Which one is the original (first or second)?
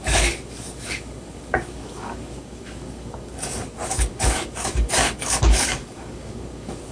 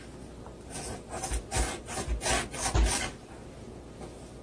second